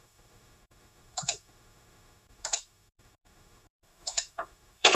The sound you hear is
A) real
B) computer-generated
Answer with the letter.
B